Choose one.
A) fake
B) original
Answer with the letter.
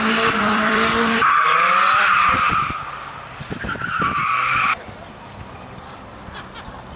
A